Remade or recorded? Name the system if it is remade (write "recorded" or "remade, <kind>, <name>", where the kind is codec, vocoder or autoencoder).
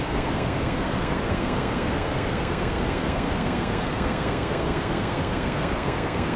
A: remade, codec, SNAC